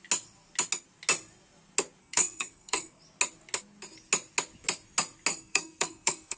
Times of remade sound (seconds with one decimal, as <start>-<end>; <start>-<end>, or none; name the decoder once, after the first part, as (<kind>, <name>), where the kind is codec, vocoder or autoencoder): 2.0-3.0 (codec, SNAC); 5.3-6.4